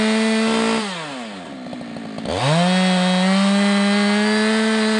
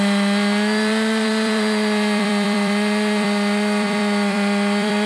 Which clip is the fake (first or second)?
second